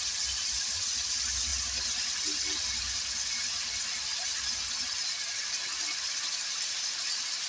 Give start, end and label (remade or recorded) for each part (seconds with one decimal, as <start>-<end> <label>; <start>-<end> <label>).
0.0-7.5 recorded

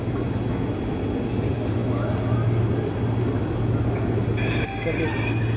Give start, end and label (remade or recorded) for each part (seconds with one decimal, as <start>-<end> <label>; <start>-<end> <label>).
0.0-5.6 recorded